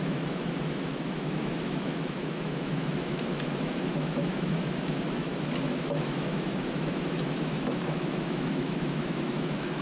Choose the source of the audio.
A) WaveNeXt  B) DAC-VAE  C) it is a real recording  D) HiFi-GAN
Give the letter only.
B